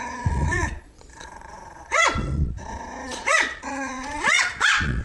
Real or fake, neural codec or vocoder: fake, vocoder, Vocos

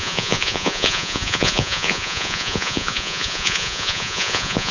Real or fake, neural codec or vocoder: fake, vocoder, Vocos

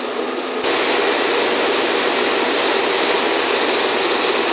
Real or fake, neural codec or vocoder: real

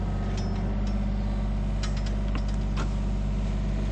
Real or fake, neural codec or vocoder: real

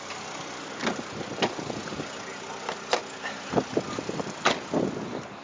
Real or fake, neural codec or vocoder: real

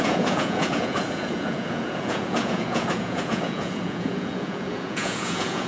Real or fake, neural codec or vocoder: fake, vocoder, Vocos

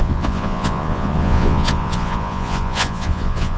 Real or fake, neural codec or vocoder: fake, vocoder, Vocos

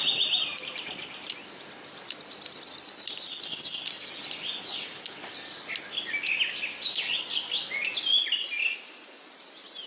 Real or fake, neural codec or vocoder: real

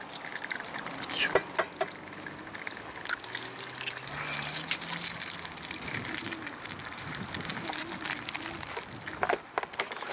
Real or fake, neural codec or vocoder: real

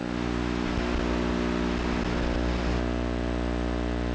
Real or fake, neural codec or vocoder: real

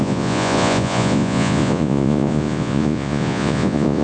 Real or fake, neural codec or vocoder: fake, vocoder, Vocos